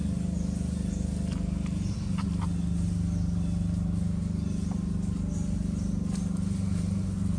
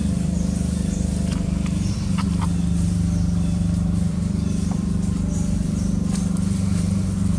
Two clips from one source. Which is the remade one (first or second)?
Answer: second